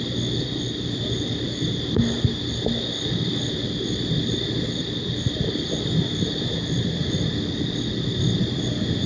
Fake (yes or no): yes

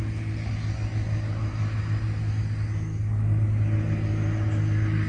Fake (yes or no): no